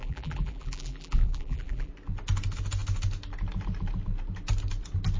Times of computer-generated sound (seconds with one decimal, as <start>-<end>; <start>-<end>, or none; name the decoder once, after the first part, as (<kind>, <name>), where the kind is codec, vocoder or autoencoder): 0.0-1.9 (vocoder, BigVGAN v2)